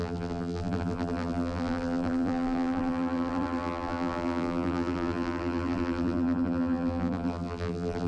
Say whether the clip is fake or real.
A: fake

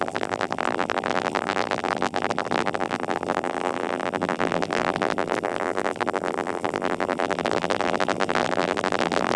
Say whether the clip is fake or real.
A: fake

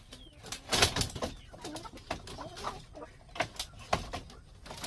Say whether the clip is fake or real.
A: real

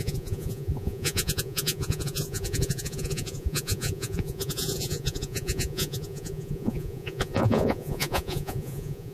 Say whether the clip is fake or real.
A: fake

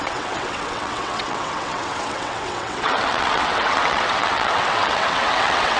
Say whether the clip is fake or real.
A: fake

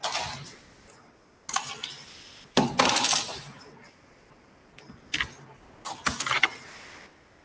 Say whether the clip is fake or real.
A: real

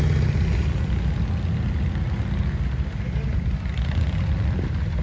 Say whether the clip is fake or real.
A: real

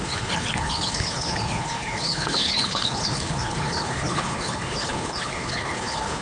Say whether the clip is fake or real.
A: fake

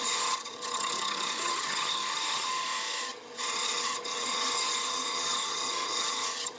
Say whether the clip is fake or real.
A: fake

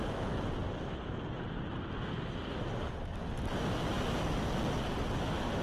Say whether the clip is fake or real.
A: real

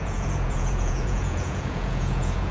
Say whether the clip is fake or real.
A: fake